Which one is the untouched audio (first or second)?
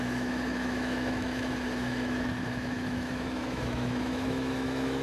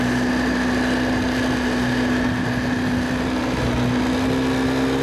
second